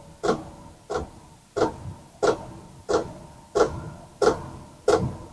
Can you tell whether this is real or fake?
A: real